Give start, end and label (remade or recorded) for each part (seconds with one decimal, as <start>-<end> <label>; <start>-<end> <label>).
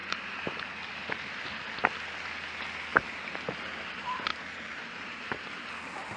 0.0-0.7 remade; 0.7-4.3 recorded; 4.3-5.5 remade; 5.5-6.2 recorded